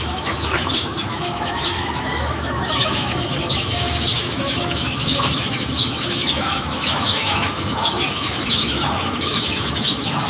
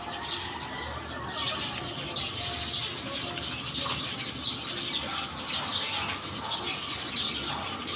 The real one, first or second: second